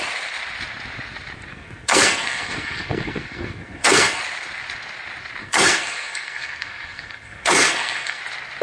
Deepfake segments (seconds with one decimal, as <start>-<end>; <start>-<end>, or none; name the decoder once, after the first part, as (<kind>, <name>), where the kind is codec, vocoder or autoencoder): 1.5-4.2 (codec, SNAC); 5.4-8.2